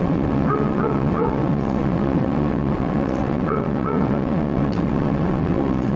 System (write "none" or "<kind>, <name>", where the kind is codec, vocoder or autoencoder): vocoder, WaveNeXt